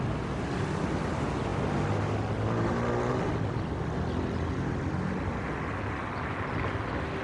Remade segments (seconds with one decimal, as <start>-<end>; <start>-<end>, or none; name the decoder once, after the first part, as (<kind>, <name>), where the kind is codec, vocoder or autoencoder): none